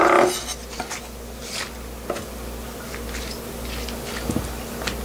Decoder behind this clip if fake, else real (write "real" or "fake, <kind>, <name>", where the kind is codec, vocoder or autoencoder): real